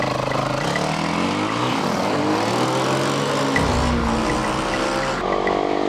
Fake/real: real